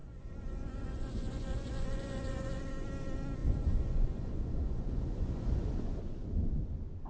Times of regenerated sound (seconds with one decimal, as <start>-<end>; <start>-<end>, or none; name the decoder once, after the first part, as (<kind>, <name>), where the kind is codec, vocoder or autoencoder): 0.0-2.6 (vocoder, Vocos); 3.4-6.0